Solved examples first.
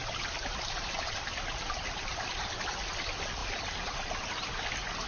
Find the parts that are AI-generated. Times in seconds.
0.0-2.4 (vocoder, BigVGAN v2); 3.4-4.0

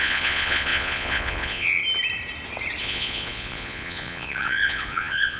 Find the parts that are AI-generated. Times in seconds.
0.0-1.8 (vocoder, Vocos); 2.8-5.4

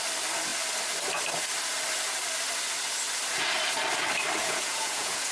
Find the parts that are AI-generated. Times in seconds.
4.4-5.3 (vocoder, Vocos)